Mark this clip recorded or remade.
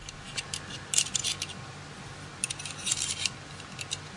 recorded